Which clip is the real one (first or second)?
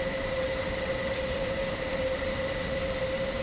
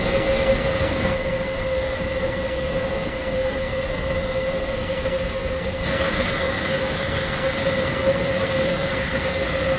first